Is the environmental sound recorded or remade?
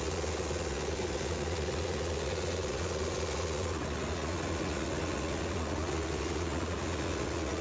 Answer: remade